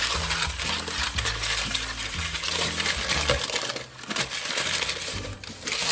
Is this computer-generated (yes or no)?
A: yes